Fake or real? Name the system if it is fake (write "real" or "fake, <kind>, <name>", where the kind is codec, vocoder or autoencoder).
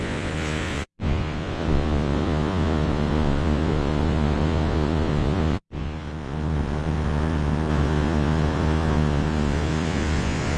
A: fake, vocoder, Vocos